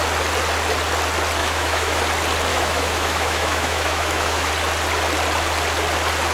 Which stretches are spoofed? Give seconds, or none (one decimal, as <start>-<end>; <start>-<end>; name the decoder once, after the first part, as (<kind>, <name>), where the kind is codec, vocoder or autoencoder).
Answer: 1.4-2.0 (autoencoder, DAC-VAE); 2.5-4.5